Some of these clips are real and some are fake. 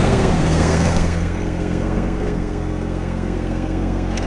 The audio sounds fake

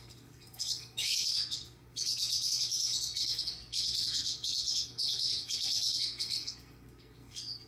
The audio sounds fake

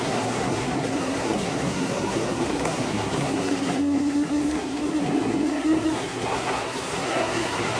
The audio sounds fake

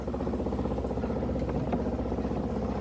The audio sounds real